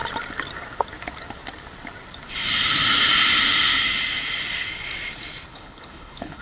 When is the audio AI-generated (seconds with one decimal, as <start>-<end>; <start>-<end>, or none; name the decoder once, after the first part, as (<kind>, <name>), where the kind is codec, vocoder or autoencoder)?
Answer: 5.5-6.4 (codec, HILCodec)